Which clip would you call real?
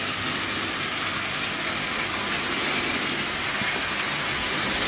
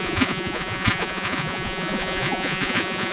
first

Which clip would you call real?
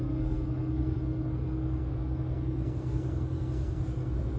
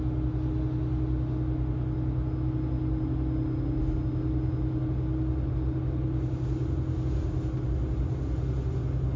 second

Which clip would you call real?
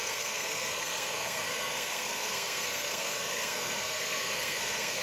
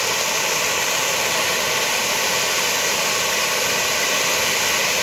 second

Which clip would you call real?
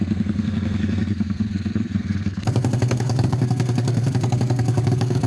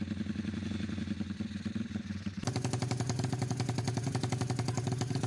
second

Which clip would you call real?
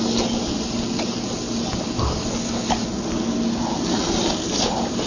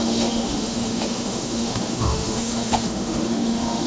first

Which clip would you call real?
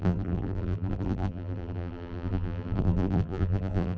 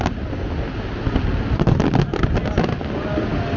second